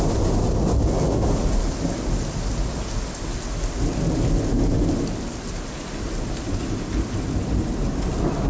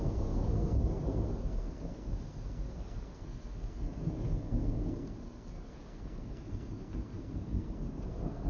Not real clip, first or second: second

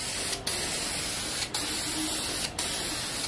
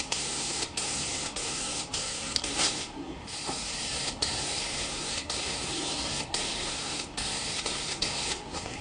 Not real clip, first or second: second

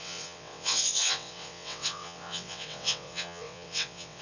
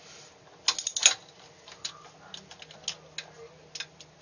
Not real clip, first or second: first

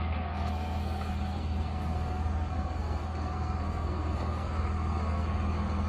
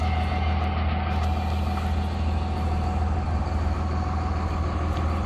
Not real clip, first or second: first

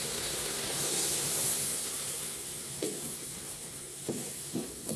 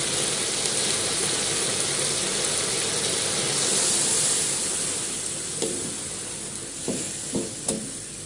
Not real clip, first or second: first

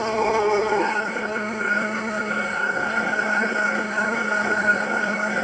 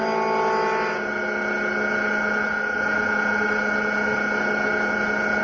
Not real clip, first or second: first